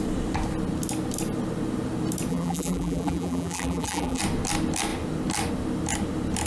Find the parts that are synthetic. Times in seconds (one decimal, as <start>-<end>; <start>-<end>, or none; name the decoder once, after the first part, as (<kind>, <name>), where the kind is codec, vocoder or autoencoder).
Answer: 2.3-4.2 (vocoder, BigVGAN v2)